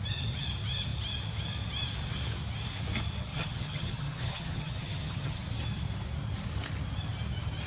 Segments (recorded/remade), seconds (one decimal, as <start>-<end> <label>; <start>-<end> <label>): 0.0-3.3 recorded; 3.3-5.4 remade; 5.4-7.7 recorded